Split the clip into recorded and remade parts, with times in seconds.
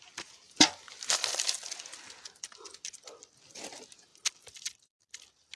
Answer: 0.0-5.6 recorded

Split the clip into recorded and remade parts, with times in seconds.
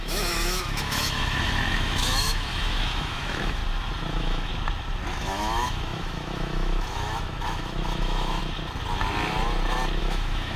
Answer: 0.0-3.6 remade; 3.6-4.1 recorded; 4.1-4.5 remade; 4.5-5.1 recorded; 5.1-8.4 remade; 8.4-10.0 recorded; 10.0-10.6 remade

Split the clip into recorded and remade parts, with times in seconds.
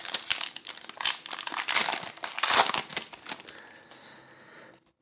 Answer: 0.0-5.0 recorded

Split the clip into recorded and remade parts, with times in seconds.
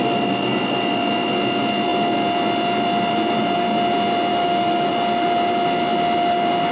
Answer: 0.0-4.3 recorded; 4.3-4.9 remade; 4.9-6.7 recorded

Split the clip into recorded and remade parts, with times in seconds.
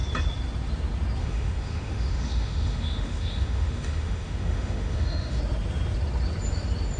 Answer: 0.0-1.2 recorded; 1.2-5.4 remade; 5.4-7.0 recorded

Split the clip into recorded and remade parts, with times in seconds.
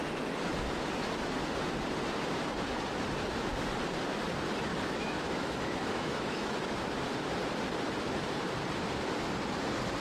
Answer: 0.0-4.7 recorded; 4.7-6.7 remade; 6.7-10.0 recorded